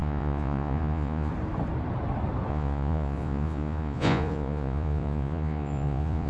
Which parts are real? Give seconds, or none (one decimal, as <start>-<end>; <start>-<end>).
1.3-2.5